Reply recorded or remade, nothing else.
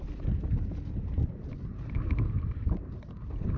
recorded